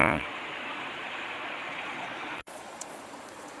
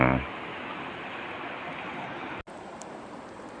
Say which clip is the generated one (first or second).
first